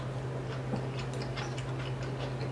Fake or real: real